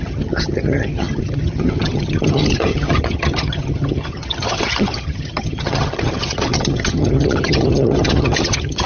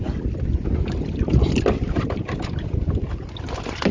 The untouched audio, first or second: second